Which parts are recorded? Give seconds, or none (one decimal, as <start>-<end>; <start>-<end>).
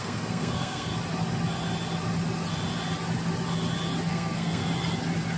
0.9-4.1; 4.6-5.4